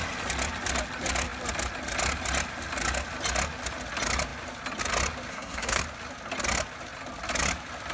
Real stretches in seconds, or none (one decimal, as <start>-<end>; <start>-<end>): 0.0-5.3; 5.8-7.9

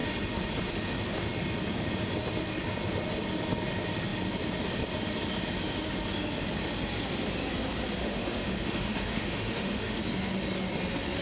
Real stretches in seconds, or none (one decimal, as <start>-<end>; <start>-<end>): 0.0-8.0; 10.0-11.2

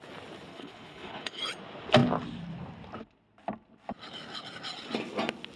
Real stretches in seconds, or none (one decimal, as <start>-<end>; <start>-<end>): 0.0-0.5; 1.4-5.6

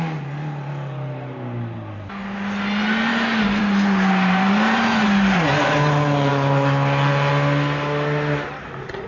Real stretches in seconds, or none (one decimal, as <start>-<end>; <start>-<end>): 0.0-9.1

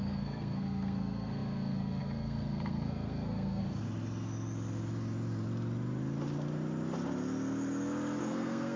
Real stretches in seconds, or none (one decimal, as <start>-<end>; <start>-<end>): 3.6-8.2

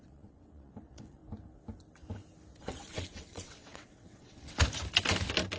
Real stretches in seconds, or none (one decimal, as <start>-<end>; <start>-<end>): 1.2-2.6; 4.6-5.6

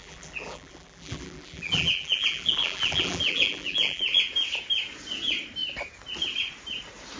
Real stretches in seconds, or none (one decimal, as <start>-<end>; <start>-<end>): 4.2-7.2

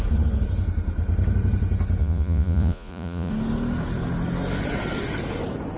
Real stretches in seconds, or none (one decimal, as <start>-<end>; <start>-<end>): 0.0-2.0; 3.3-5.8